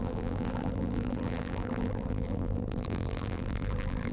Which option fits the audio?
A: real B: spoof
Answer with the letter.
B